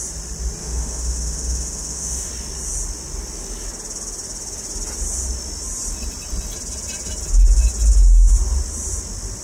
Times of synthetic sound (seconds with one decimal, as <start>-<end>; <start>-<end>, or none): 0.6-2.3

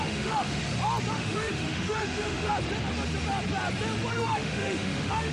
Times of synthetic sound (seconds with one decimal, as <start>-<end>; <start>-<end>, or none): 0.0-0.6; 1.1-2.5; 4.1-5.3

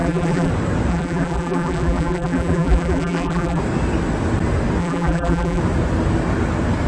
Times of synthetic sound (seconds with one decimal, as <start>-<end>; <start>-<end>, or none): 0.0-0.5; 0.9-3.6; 4.8-5.6

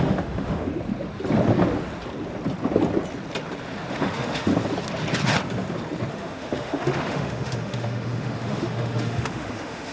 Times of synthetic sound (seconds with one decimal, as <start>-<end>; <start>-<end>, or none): 0.0-0.7; 3.9-4.5; 6.1-9.9

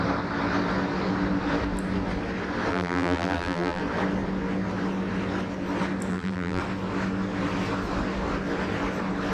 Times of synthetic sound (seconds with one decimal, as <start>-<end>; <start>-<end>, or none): 2.7-3.8; 6.1-6.6

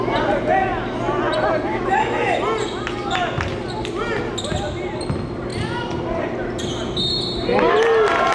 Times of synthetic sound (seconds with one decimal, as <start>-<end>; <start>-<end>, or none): 1.7-2.4

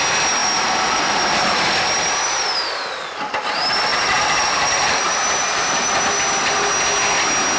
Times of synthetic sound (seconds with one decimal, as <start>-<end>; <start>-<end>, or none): 0.4-1.7; 3.9-5.9